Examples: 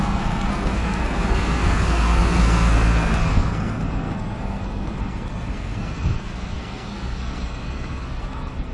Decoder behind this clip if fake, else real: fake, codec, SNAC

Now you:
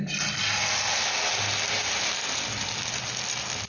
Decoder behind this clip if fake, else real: real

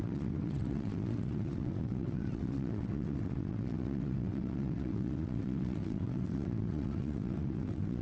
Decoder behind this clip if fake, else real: fake, vocoder, WaveNeXt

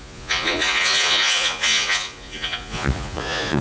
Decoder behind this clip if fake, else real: fake, vocoder, Vocos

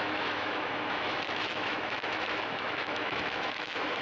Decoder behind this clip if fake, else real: fake, autoencoder, DAC-VAE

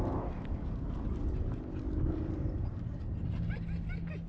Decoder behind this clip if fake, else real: real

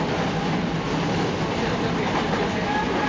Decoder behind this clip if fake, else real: real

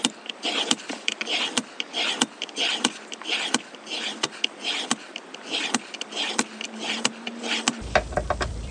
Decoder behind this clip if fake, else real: fake, vocoder, BigVGAN v2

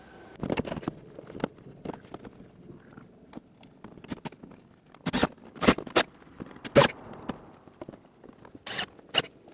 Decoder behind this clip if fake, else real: real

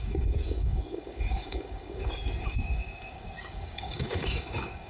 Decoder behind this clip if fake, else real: fake, codec, DAC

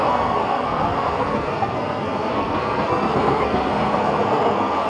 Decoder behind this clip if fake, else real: fake, codec, SNAC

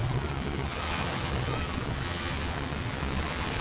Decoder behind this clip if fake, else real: fake, vocoder, WaveNeXt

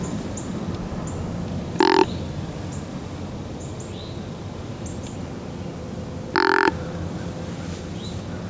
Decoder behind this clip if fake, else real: real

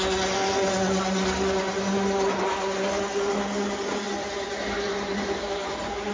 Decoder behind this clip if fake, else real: real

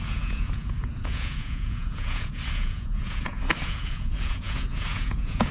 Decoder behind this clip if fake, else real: fake, vocoder, Vocos